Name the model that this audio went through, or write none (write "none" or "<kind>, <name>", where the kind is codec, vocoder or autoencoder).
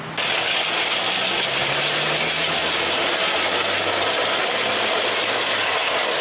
none